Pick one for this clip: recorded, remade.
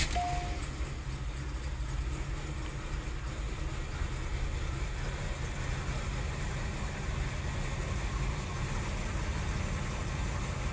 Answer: recorded